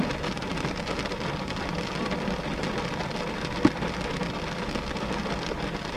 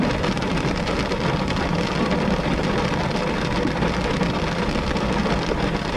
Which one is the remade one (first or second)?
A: second